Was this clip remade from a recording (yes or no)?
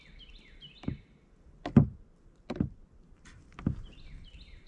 no